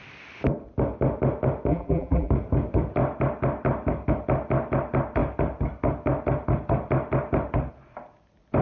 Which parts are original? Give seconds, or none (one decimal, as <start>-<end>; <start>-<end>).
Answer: 0.0-1.7; 2.3-8.6